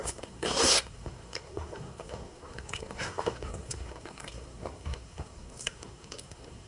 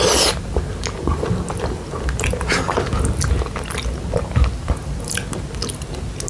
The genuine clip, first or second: second